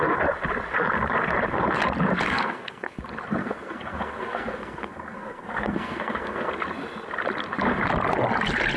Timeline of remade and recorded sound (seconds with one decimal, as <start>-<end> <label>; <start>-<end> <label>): 0.0-2.3 recorded; 2.3-3.0 remade; 3.0-3.4 recorded; 3.4-6.5 remade; 6.5-8.8 recorded